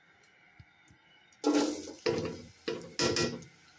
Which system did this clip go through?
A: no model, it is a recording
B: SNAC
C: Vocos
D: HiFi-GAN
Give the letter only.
A